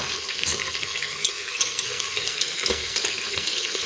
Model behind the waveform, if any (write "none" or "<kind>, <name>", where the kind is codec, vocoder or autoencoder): codec, SNAC